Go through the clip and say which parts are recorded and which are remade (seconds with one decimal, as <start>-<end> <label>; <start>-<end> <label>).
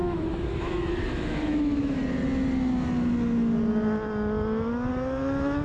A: 0.0-2.0 remade; 2.0-4.9 recorded; 4.9-5.6 remade